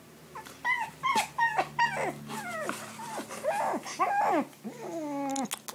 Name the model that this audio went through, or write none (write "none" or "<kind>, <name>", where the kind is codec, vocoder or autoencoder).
none